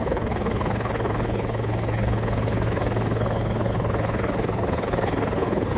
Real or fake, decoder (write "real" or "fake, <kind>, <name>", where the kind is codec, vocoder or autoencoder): fake, codec, HILCodec